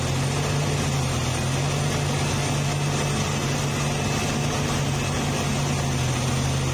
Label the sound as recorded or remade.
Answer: recorded